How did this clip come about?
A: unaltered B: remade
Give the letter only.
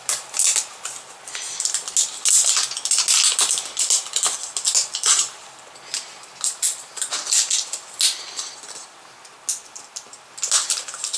A